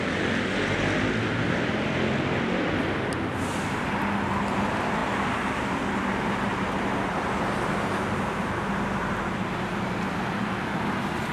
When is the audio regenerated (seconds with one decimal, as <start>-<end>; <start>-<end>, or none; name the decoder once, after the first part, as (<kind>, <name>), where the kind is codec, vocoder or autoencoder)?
none